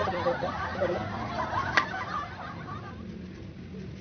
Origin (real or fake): real